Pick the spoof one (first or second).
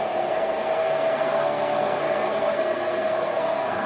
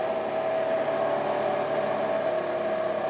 first